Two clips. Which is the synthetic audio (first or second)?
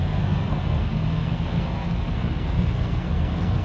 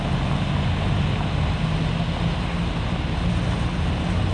first